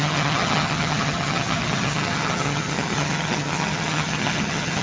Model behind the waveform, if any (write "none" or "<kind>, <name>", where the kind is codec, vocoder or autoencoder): vocoder, HiFi-GAN